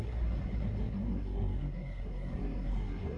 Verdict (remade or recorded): remade